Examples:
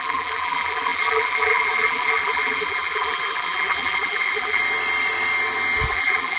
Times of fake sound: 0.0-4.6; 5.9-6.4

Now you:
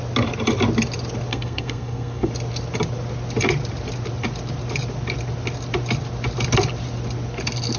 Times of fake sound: 1.3-2.3